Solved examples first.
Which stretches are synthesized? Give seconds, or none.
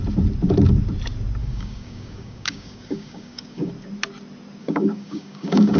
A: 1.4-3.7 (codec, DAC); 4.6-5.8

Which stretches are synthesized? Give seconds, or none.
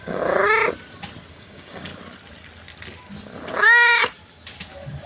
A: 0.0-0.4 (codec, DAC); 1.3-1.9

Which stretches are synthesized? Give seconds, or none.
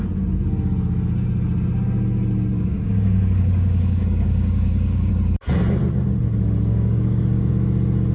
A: 2.5-5.1 (codec, DAC); 6.7-7.5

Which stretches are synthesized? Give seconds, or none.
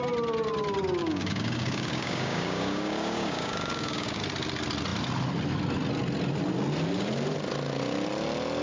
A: 1.0-4.2 (codec, DAC)